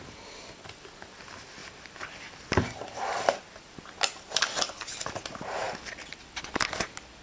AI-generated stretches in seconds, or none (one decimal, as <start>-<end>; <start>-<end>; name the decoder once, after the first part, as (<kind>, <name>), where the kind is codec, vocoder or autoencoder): 1.6-4.0 (vocoder, BigVGAN v2)